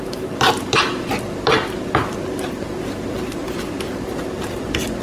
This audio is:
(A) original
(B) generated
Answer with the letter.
A